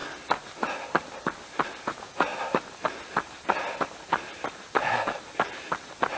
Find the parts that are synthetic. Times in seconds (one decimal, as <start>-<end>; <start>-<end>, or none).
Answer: 1.8-2.3